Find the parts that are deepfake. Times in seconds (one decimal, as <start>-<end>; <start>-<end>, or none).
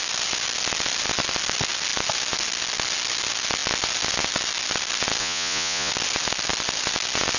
5.2-5.9